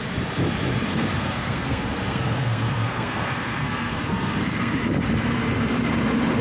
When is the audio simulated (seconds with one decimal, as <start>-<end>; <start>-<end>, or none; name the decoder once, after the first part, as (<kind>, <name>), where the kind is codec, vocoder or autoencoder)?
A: 0.9-4.7 (codec, SNAC)